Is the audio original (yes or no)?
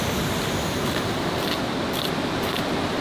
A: yes